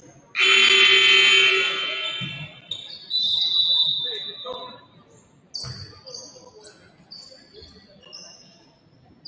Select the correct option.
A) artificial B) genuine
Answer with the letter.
B